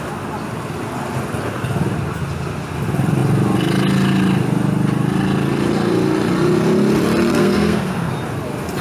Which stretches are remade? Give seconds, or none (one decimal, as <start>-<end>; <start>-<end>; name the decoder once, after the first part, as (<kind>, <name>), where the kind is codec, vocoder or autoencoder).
7.3-8.1 (codec, SNAC)